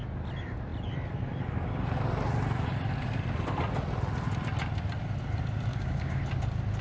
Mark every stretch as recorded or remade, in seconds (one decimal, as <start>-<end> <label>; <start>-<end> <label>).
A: 0.0-5.7 recorded; 5.7-6.2 remade; 6.2-6.8 recorded